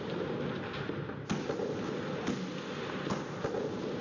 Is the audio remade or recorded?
recorded